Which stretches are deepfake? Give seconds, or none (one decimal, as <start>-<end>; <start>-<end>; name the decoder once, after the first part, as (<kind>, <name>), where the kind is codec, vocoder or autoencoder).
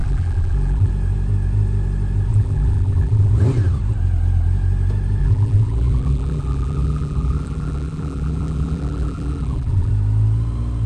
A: 0.0-0.9 (vocoder, BigVGAN v2); 2.3-3.3; 5.2-9.9